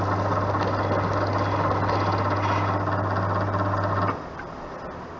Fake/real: real